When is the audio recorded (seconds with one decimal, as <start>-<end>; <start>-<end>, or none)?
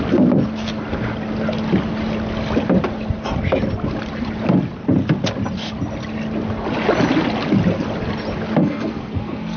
0.0-8.6